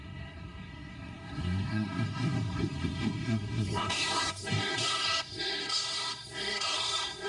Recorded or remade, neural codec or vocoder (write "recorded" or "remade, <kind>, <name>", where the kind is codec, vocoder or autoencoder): remade, codec, SNAC